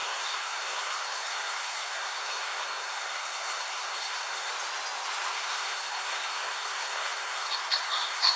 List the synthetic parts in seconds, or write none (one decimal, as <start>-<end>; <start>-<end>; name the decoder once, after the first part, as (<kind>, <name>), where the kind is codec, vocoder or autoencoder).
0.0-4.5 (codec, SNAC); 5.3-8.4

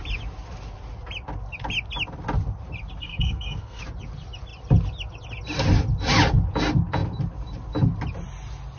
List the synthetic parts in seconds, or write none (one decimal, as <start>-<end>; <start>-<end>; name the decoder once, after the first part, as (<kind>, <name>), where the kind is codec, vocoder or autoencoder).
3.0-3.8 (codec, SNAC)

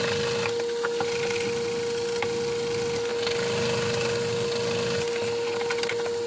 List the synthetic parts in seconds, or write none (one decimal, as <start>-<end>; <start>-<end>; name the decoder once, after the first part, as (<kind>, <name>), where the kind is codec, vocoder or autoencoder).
none